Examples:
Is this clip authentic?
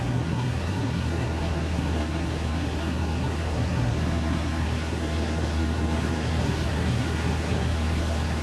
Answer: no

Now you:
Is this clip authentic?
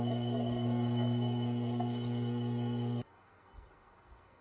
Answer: no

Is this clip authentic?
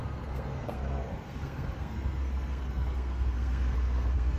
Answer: no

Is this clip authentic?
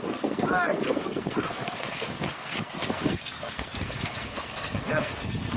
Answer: no